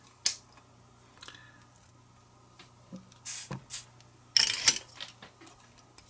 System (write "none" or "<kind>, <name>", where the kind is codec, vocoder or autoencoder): none